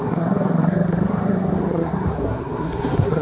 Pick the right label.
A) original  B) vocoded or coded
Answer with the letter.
B